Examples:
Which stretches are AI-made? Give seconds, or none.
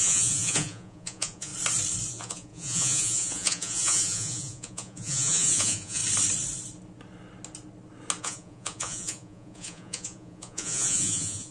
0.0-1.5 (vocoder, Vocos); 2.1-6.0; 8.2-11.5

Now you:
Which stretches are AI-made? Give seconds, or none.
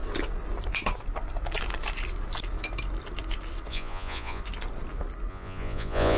3.7-4.4 (vocoder, Vocos); 5.3-6.2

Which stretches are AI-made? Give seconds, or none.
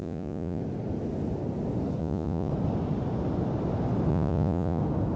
0.0-0.6 (vocoder, Vocos); 2.0-2.5; 4.1-4.8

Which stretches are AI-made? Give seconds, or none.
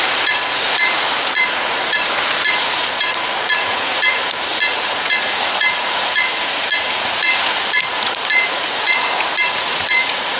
0.0-10.4 (vocoder, Vocos)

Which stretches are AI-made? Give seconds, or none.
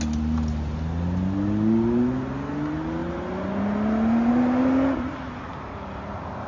none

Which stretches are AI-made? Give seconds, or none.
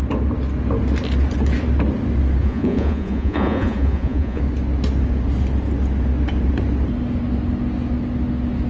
2.4-4.4 (vocoder, Vocos)